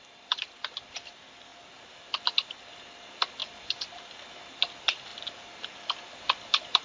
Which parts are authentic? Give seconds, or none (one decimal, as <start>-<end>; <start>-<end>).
1.5-2.6; 5.1-6.2